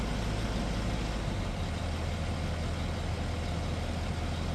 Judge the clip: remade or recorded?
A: recorded